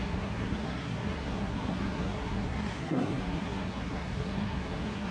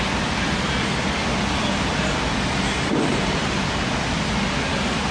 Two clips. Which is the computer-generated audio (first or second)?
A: first